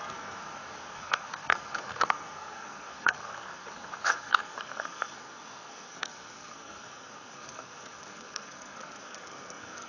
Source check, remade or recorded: remade